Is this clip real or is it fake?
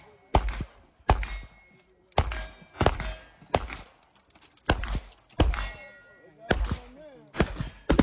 real